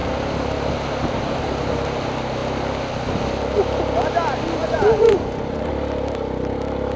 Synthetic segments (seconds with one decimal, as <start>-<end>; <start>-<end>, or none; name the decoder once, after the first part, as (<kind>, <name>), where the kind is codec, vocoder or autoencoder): 4.6-5.7 (vocoder, Vocos)